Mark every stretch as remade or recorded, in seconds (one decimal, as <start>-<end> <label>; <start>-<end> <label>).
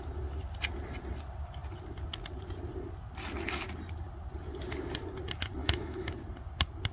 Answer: 0.0-5.6 recorded; 5.6-6.1 remade; 6.1-6.9 recorded